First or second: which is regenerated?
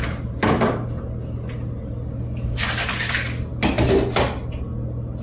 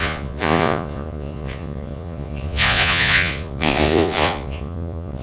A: second